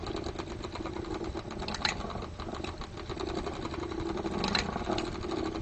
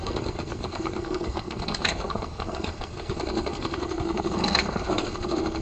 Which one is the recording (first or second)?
first